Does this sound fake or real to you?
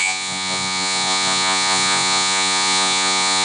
fake